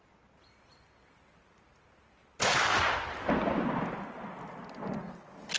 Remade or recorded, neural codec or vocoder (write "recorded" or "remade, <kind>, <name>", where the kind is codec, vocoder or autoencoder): recorded